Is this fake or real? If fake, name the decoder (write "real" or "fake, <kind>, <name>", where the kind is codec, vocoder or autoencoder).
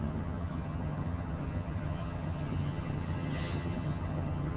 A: fake, vocoder, HiFi-GAN